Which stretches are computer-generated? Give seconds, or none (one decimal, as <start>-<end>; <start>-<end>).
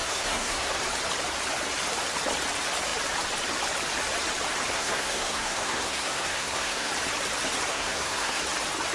0.0-0.8; 4.7-6.9; 7.7-8.4